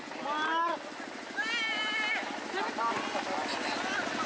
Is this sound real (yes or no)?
yes